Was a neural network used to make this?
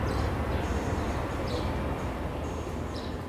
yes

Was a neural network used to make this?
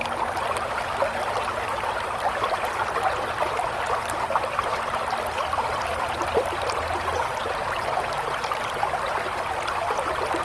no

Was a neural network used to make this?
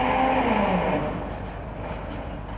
no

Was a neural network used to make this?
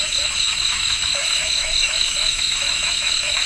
yes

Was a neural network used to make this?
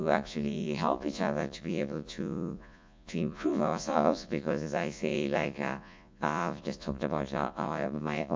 yes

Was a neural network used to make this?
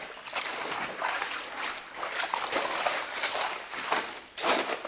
no